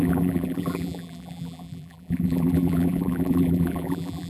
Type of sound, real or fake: fake